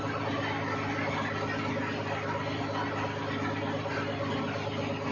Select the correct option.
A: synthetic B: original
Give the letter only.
B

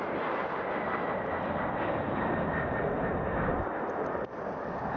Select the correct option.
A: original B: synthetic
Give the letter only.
A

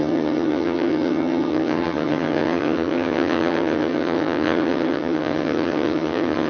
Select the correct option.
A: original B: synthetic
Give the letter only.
B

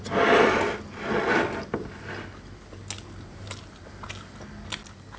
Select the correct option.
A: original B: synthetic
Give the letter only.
A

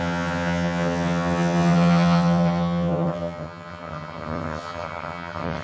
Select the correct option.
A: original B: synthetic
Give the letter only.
B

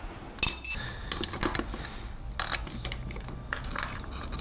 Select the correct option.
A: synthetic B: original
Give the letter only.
B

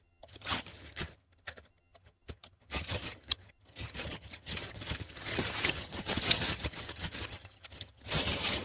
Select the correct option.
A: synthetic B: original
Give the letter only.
A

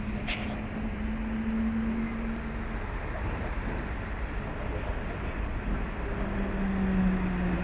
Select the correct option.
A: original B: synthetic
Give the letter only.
A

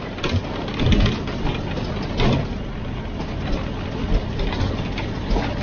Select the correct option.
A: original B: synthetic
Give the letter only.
A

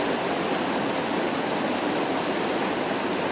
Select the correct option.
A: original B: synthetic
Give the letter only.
A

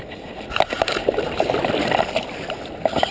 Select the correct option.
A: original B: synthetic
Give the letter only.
A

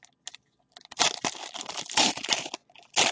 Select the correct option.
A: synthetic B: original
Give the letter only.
B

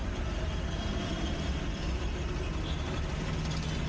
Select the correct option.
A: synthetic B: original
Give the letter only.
B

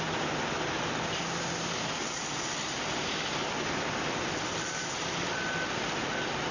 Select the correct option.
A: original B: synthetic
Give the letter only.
A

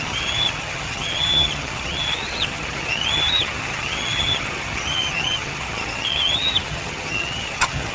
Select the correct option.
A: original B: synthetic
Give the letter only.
B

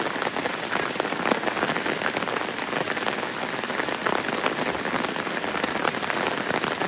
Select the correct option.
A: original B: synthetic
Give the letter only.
A